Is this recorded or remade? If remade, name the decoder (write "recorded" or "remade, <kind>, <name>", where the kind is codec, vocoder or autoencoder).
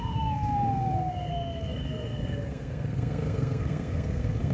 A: remade, codec, SNAC